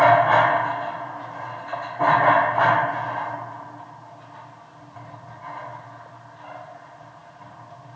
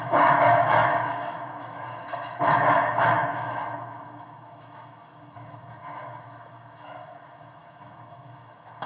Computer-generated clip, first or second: second